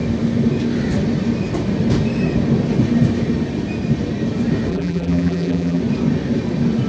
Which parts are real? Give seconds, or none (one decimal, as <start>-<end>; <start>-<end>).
0.0-4.7; 5.8-6.9